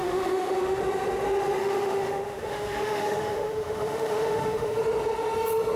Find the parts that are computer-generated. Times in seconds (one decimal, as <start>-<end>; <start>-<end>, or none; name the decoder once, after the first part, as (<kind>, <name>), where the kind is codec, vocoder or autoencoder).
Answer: 0.0-0.8 (autoencoder, DAC-VAE); 1.6-4.8